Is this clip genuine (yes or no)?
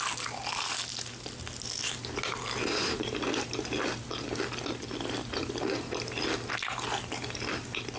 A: yes